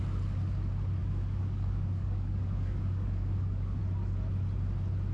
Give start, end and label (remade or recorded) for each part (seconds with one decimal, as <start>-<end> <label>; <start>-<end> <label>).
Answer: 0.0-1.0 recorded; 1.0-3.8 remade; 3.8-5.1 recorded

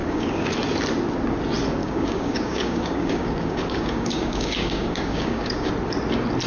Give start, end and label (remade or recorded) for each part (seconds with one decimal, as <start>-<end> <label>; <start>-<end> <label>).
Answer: 0.0-0.5 remade; 0.5-1.8 recorded; 1.8-5.7 remade; 5.7-6.5 recorded

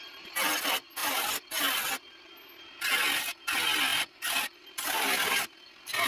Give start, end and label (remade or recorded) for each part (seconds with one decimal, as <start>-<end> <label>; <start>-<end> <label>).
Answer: 0.0-6.1 recorded

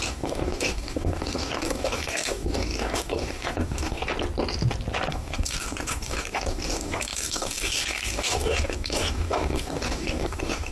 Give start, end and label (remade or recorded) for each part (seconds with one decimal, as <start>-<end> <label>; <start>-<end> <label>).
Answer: 0.0-4.0 remade; 4.0-5.1 recorded; 5.1-10.7 remade

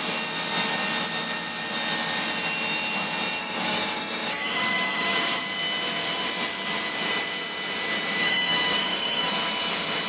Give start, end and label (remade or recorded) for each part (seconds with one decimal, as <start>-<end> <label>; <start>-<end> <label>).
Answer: 0.0-3.4 recorded; 3.4-5.4 remade; 5.4-8.2 recorded; 8.2-9.3 remade; 9.3-10.1 recorded

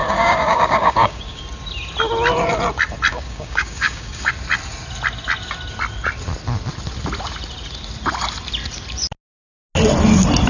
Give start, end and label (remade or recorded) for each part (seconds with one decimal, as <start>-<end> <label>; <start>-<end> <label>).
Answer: 0.0-1.4 remade; 1.4-3.1 recorded; 3.1-4.3 remade; 4.3-10.5 recorded

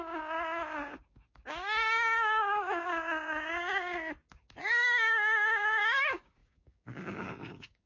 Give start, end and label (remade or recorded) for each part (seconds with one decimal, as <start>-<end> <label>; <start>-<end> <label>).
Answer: 0.0-7.9 remade